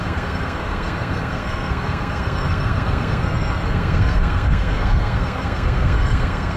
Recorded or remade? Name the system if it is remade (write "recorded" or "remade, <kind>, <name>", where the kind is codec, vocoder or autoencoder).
remade, codec, SNAC